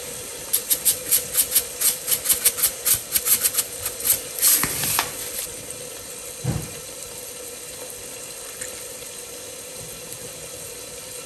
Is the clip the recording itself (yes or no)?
yes